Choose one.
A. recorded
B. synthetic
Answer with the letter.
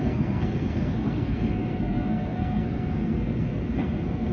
B